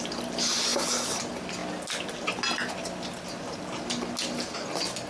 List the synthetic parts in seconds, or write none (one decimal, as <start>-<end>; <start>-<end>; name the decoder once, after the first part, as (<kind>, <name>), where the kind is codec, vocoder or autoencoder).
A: none